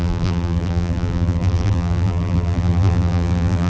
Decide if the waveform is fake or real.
fake